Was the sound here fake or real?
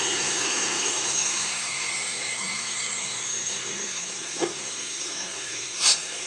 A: fake